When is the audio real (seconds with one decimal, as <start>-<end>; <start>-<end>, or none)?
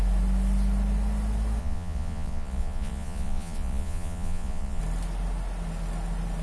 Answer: 0.0-1.6; 4.8-6.4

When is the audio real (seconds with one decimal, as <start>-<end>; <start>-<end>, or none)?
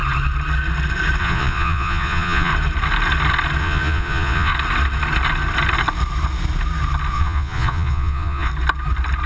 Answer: 0.0-1.2; 2.5-3.6; 4.5-7.1; 8.5-9.3